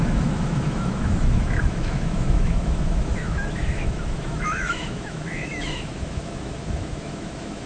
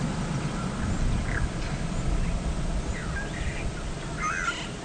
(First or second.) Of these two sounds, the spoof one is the first